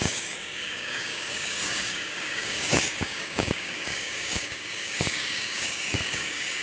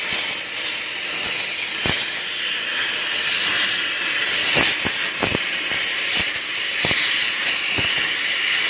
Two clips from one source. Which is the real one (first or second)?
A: second